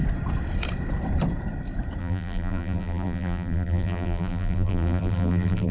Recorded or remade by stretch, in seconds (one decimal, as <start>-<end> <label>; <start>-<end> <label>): 0.0-2.0 recorded; 2.0-5.7 remade